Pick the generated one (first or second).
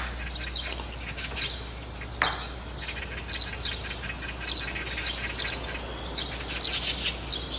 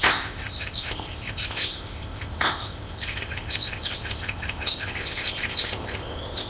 second